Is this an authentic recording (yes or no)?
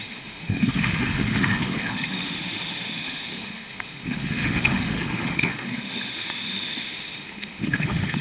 no